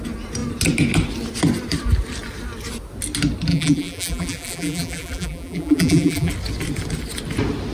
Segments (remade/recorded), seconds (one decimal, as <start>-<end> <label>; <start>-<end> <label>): 0.0-3.5 recorded; 3.5-6.3 remade; 6.3-7.7 recorded